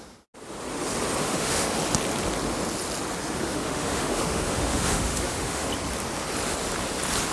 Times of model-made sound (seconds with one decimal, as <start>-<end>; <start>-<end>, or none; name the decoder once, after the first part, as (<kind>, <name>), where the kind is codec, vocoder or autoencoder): 1.2-1.8 (autoencoder, DAC-VAE); 3.5-5.7